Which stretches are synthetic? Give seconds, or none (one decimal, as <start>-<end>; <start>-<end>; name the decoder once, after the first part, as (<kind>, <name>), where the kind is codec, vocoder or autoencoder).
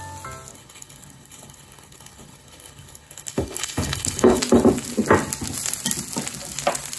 0.5-4.4 (codec, HILCodec)